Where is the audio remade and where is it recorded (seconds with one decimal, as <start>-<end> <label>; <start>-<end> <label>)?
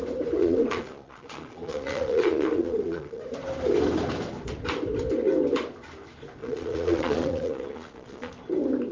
0.0-0.4 recorded; 0.4-3.2 remade; 3.2-6.4 recorded; 6.4-8.3 remade; 8.3-8.9 recorded